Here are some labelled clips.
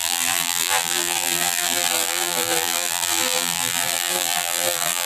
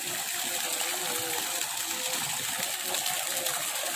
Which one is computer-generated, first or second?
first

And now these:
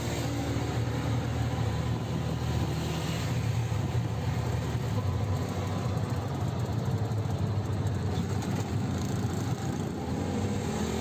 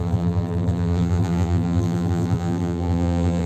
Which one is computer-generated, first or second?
second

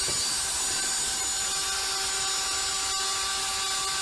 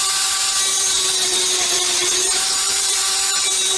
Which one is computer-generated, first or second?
second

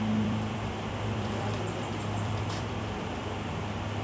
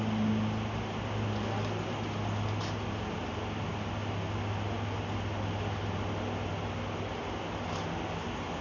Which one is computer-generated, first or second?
first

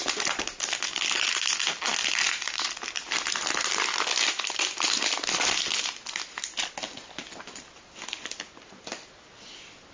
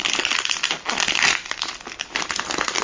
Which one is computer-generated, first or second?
second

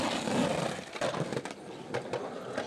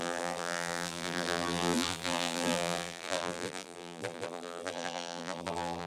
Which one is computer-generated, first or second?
second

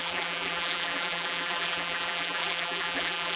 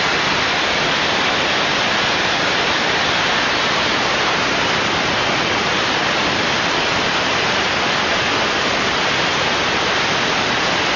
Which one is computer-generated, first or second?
first